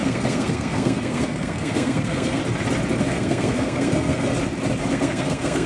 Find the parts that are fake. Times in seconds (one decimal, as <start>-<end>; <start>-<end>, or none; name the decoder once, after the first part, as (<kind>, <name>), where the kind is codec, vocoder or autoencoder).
0.0-2.4 (codec, SNAC); 3.0-4.3; 4.9-5.7